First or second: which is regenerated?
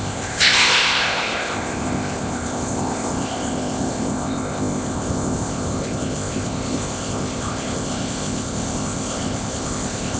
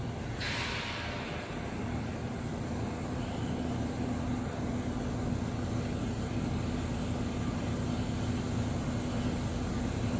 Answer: first